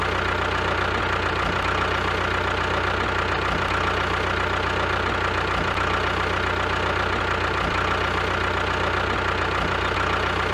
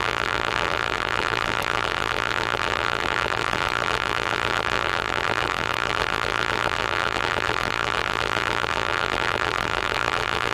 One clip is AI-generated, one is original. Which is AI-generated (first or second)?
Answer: second